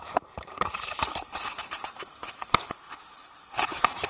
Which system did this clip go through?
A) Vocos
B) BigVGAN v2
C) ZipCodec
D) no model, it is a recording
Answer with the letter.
B